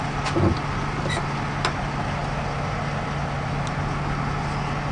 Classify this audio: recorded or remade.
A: recorded